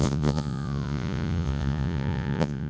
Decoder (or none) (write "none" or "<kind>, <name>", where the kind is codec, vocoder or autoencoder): vocoder, Vocos